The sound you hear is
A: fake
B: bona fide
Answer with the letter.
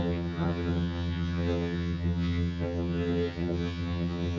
A